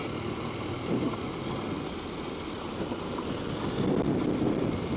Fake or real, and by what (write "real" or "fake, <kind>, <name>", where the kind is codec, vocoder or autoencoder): real